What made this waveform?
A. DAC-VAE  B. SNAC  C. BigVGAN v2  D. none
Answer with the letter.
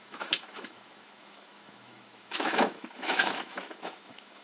A